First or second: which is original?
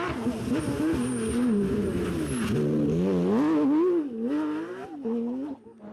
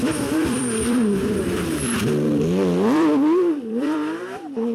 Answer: first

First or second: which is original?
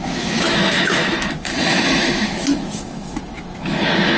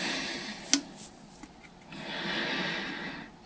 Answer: second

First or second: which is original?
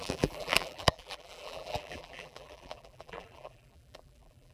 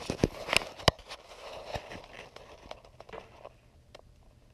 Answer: second